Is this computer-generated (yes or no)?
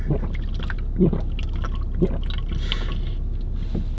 no